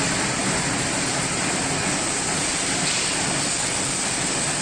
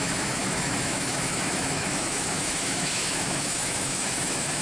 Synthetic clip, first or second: second